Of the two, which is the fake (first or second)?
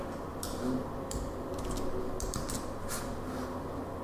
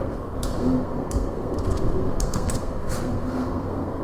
second